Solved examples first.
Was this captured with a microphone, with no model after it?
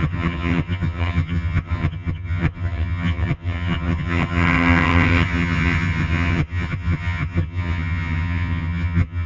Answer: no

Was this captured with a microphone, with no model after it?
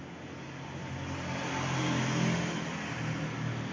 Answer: yes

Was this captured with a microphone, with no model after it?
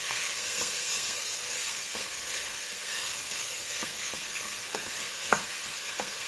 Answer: no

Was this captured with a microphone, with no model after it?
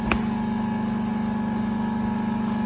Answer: yes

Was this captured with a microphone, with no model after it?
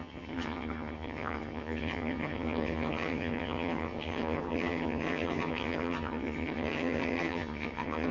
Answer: no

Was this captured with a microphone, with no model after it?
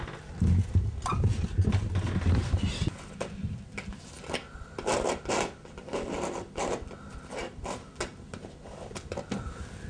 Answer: yes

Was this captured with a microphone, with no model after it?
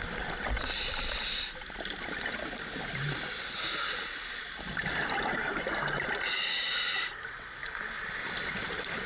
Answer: yes